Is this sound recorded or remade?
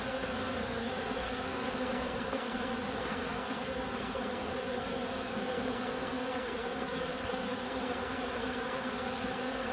remade